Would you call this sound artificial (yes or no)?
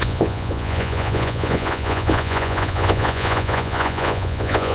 yes